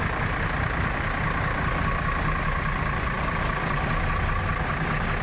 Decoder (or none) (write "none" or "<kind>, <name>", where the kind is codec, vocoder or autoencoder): none